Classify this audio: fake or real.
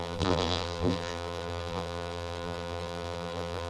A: fake